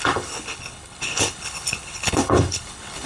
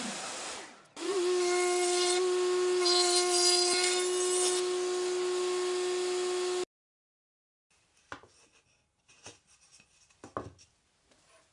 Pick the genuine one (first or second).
second